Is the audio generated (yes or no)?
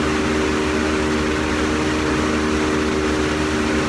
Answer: no